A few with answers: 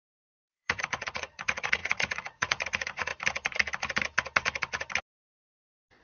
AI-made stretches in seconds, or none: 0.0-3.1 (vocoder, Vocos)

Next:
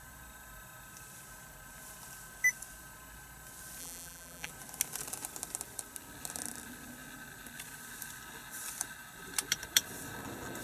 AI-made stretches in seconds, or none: 3.8-4.5 (vocoder, BigVGAN v2)

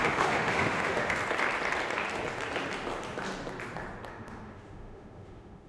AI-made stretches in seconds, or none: 0.0-1.2 (autoencoder, DAC-VAE); 4.1-5.7